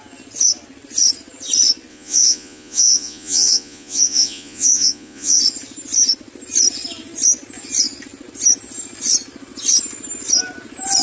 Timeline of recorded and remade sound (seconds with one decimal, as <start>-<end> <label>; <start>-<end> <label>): 0.0-1.9 recorded; 1.9-5.4 remade; 5.4-11.0 recorded